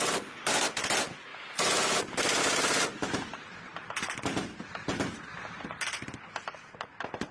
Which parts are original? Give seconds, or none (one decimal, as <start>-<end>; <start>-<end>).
0.0-7.3

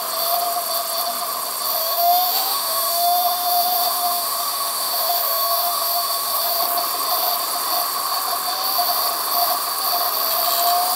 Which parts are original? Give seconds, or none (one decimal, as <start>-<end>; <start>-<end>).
0.0-1.8; 6.6-11.0

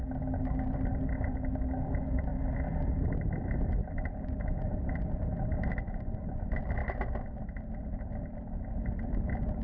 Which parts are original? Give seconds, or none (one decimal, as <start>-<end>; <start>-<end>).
0.0-9.6

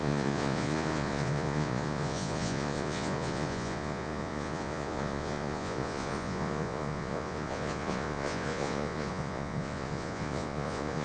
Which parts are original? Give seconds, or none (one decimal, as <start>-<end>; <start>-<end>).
none

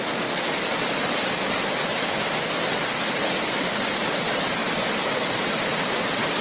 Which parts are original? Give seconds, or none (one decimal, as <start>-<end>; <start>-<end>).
0.0-6.4

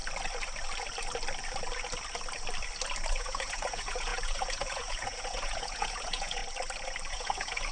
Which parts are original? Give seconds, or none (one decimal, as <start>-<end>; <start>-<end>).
0.0-3.1; 6.4-7.1

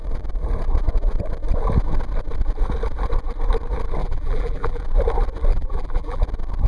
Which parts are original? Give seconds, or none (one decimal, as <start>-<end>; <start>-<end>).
0.0-4.0; 4.8-5.5; 6.2-6.7